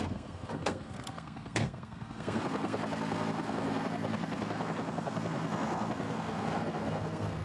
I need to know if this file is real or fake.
fake